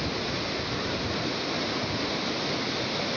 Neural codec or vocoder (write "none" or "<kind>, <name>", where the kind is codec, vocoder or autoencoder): none